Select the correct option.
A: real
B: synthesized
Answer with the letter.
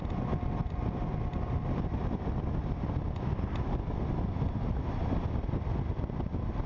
A